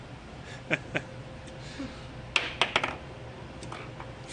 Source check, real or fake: real